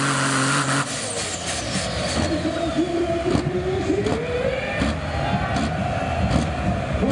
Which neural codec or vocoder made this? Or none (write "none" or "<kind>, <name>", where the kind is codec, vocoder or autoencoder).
none